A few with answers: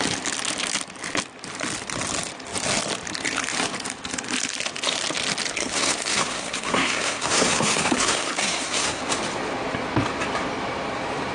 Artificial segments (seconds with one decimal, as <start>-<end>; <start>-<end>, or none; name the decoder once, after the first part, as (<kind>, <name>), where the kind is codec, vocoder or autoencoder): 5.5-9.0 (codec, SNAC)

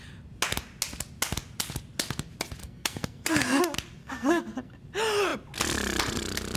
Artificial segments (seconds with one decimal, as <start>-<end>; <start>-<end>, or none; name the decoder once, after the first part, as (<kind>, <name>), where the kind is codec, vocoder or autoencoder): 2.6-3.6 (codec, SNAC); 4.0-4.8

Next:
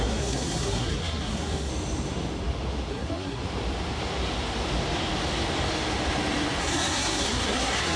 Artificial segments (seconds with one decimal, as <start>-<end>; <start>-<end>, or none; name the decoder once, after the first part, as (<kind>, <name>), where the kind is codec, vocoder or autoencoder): 0.0-1.7 (codec, SNAC); 2.9-3.4; 6.6-8.0